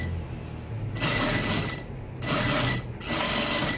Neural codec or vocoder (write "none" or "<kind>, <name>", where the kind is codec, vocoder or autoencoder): none